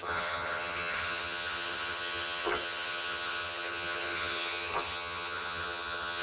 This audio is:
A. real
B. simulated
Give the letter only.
B